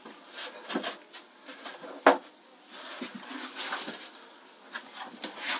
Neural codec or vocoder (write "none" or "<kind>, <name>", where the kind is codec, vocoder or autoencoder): none